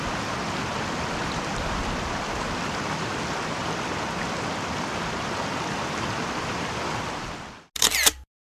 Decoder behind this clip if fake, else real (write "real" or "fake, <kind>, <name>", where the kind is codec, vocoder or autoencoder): real